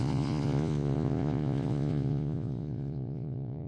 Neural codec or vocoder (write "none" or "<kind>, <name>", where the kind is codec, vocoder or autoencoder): vocoder, Vocos